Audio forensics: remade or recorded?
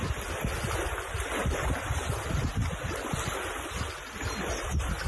recorded